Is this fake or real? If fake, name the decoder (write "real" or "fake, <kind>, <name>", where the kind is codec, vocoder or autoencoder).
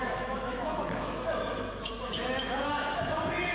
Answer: fake, autoencoder, DAC-VAE